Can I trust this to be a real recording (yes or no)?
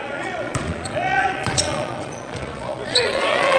no